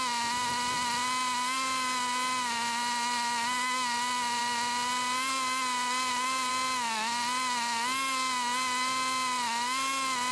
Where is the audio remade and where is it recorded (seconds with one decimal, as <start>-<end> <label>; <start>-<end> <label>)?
0.0-10.3 recorded